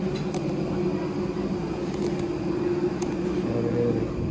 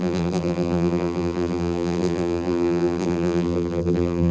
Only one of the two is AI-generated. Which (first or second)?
second